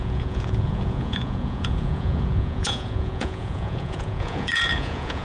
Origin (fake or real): fake